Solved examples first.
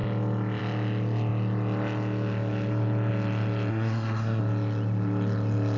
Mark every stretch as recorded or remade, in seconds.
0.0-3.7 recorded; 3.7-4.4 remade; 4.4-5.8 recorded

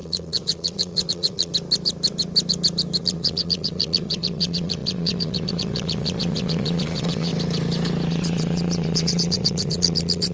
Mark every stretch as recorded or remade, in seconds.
0.0-1.5 remade; 1.5-3.0 recorded; 3.0-7.3 remade; 7.3-8.1 recorded; 8.1-10.3 remade